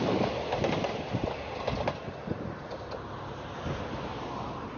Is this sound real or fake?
real